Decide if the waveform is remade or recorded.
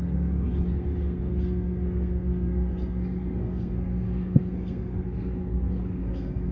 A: remade